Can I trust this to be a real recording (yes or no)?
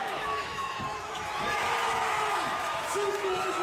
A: no